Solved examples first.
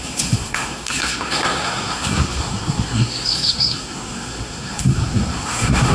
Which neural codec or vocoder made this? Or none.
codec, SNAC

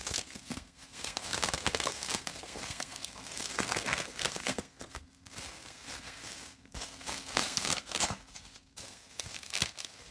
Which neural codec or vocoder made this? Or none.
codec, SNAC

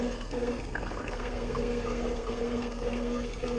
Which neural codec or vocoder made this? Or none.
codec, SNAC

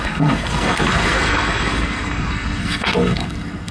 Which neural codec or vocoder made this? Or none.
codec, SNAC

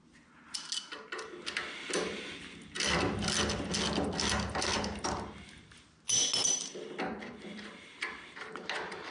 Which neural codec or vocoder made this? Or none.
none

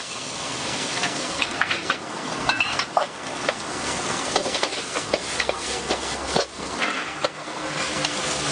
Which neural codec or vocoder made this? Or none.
codec, SNAC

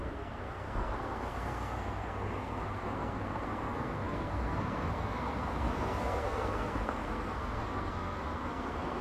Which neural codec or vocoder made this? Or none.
codec, SNAC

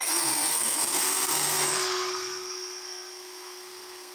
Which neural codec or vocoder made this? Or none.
codec, SNAC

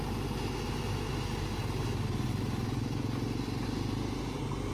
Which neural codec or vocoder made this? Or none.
none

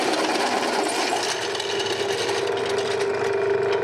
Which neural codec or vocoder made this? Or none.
none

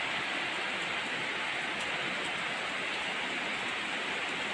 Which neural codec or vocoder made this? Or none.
none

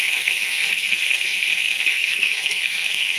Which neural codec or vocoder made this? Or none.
codec, SNAC